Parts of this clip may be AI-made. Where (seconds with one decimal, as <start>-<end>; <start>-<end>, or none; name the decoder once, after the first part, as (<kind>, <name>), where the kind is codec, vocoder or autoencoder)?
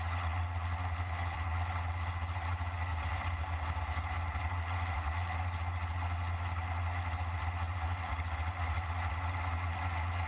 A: 0.0-2.9 (vocoder, Vocos); 4.4-10.3